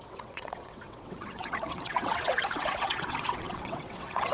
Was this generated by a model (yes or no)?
yes